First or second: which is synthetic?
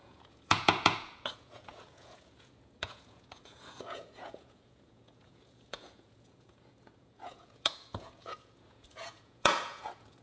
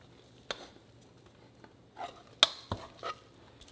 first